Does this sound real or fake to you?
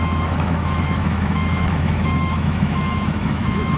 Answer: fake